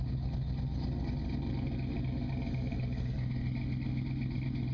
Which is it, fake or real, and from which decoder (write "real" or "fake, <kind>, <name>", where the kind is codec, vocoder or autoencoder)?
real